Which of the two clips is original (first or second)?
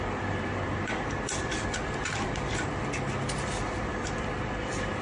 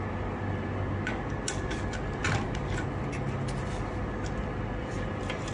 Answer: second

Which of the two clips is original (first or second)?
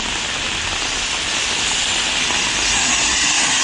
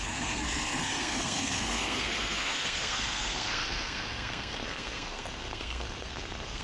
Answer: first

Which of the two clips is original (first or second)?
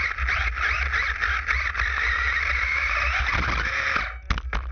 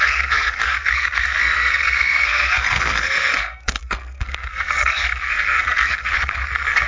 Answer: first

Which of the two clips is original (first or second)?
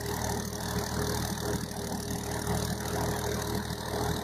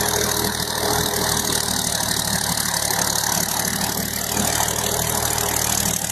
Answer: second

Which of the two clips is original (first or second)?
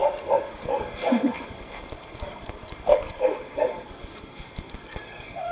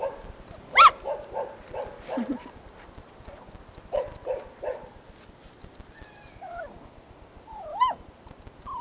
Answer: second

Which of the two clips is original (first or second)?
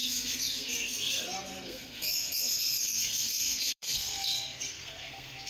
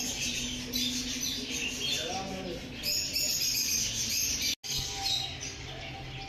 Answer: second